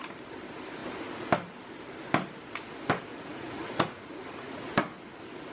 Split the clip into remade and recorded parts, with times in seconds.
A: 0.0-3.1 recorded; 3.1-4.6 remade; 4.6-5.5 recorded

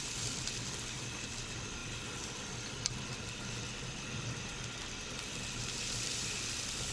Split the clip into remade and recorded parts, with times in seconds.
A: 0.0-6.9 recorded